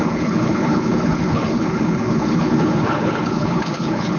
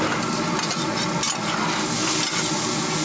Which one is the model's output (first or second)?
first